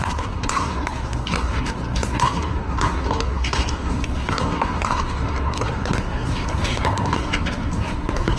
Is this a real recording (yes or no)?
no